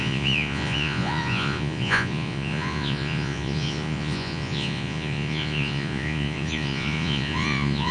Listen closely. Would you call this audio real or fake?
fake